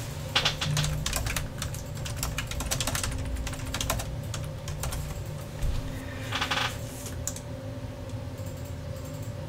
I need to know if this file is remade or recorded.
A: recorded